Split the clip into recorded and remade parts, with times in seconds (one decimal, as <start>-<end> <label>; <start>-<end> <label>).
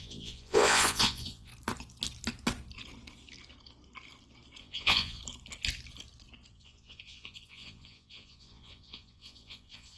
0.0-1.5 remade; 1.5-4.6 recorded; 4.6-5.2 remade; 5.2-6.5 recorded; 6.5-10.0 remade